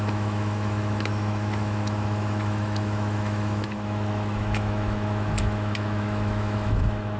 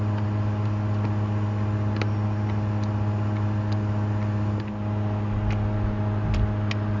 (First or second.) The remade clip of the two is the first